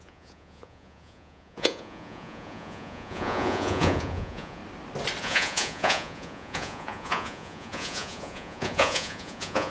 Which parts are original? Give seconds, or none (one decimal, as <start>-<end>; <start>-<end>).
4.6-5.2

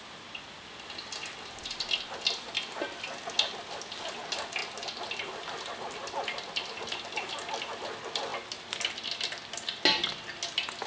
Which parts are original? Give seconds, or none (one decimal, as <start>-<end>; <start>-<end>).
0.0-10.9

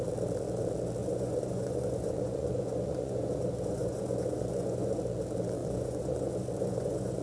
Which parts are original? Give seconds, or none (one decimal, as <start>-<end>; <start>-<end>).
0.0-1.0; 5.0-5.6

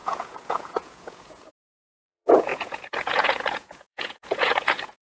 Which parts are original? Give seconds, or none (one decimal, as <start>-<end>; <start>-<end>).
none